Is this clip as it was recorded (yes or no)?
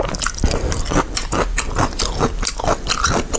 yes